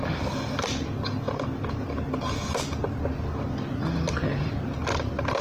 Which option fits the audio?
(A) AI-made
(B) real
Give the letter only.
B